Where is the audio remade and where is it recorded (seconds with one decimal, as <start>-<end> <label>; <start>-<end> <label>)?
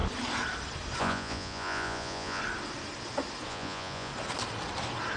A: 0.0-1.0 recorded; 1.0-2.4 remade; 2.4-3.5 recorded; 3.5-4.1 remade; 4.1-5.2 recorded